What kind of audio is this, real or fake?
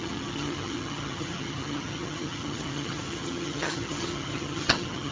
fake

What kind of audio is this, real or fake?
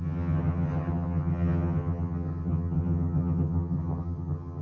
fake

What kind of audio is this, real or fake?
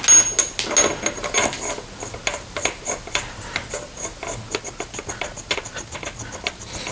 real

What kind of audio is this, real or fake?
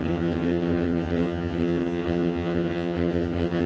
fake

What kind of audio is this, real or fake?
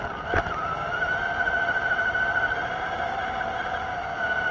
real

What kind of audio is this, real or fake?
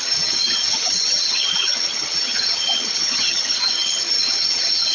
fake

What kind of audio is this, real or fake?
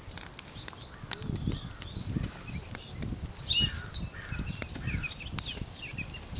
real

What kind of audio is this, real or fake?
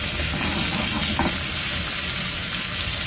real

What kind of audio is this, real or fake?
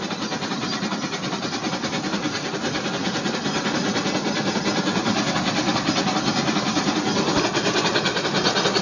real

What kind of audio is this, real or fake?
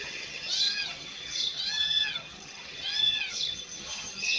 fake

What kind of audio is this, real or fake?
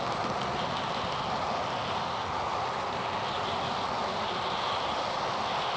real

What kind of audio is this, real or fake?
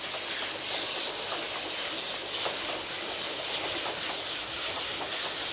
real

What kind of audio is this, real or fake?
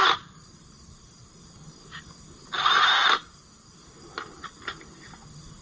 real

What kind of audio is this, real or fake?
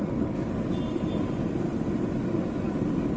real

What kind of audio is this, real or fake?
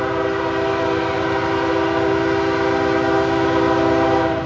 real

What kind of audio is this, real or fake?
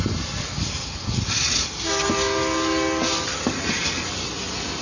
real